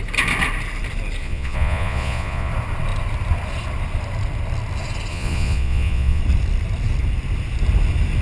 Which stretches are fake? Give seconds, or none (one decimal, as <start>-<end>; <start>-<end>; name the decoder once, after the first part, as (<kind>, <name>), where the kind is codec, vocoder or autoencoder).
1.2-2.5 (vocoder, Vocos); 5.1-6.2